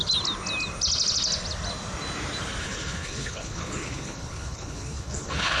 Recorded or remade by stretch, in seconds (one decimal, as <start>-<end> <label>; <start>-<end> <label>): 0.0-2.6 recorded; 2.6-5.6 remade